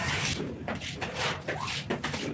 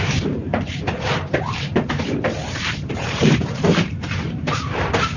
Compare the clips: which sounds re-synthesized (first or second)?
second